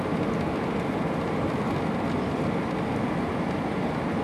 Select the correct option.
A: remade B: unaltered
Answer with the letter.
B